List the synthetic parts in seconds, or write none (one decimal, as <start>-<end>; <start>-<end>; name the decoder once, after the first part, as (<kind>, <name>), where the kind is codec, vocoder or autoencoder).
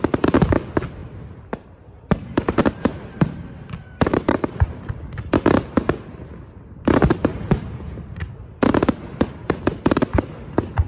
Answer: 1.0-4.9 (vocoder, BigVGAN v2); 7.3-8.3